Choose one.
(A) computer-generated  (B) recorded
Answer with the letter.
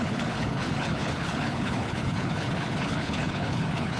A